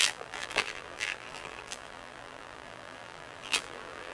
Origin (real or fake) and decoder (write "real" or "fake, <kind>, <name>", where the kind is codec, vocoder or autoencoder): fake, vocoder, BigVGAN v2